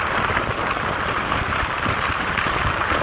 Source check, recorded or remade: recorded